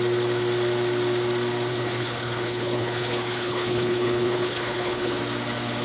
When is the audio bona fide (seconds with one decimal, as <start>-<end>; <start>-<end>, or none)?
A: 0.0-1.7; 5.2-5.8